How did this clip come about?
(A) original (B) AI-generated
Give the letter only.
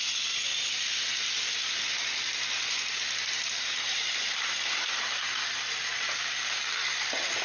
A